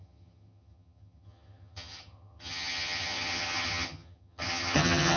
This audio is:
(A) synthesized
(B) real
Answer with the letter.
A